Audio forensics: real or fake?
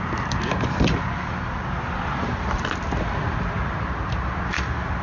real